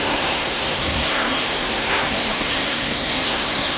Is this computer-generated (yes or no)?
yes